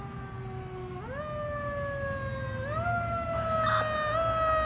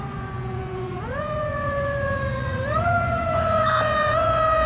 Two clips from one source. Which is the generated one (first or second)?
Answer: second